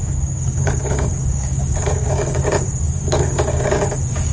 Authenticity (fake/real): fake